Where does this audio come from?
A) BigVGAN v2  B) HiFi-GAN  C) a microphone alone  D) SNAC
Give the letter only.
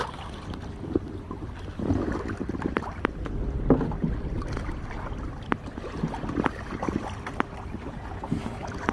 C